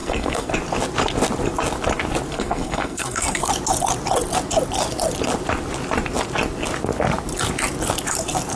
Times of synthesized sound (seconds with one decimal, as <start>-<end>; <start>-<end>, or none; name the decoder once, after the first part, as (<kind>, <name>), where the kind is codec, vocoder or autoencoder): 0.0-0.5 (codec, SNAC); 2.3-3.5